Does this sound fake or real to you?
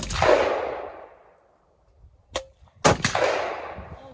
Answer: real